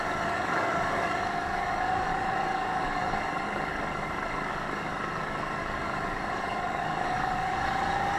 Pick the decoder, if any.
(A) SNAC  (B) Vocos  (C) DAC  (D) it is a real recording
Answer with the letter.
C